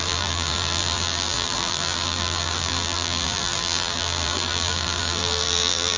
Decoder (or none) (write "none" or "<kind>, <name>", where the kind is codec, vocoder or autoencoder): vocoder, BigVGAN v2